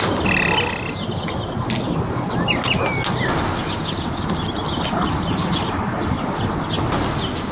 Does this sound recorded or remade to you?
recorded